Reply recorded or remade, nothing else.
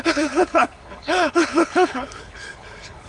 remade